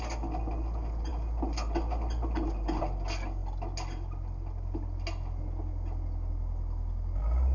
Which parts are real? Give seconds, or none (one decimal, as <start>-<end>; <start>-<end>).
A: 0.0-7.5